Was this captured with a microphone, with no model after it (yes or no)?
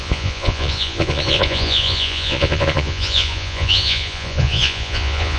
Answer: no